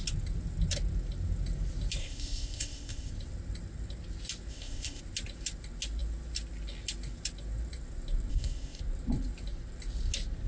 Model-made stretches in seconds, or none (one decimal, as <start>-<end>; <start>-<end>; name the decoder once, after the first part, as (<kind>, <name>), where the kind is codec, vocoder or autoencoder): 2.0-3.1 (codec, ZipCodec); 4.5-5.0; 8.3-8.8